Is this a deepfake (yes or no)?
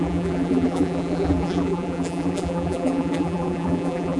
yes